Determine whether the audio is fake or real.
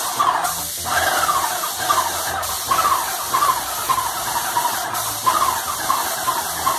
real